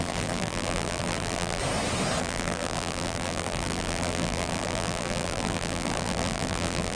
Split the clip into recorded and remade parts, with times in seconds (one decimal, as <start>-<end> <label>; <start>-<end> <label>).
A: 0.0-1.6 remade; 1.6-2.2 recorded; 2.2-7.0 remade